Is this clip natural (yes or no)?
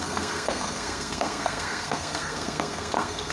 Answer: no